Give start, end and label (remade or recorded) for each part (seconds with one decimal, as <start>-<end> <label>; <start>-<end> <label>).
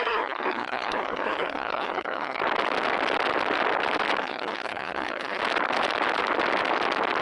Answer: 0.0-2.4 remade; 2.4-4.2 recorded; 4.2-5.4 remade; 5.4-7.2 recorded